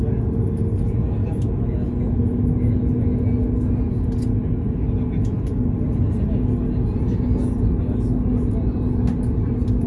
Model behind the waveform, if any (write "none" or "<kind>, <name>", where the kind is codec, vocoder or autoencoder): none